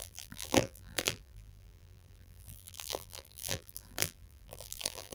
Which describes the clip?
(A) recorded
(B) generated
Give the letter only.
B